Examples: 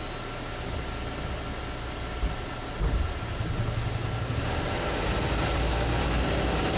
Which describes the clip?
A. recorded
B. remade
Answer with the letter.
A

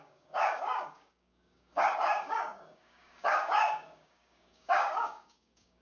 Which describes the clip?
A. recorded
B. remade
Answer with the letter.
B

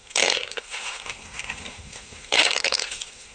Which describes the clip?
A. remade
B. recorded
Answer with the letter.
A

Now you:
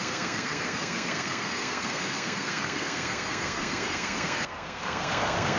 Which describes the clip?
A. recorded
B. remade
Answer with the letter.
B